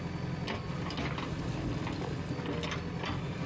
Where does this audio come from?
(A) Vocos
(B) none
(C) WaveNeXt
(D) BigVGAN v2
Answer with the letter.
B